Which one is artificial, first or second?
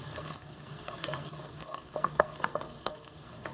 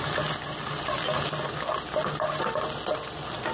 first